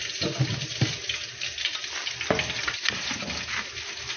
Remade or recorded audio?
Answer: recorded